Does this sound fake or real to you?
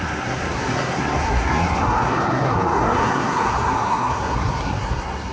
fake